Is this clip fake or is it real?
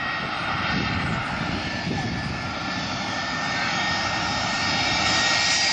real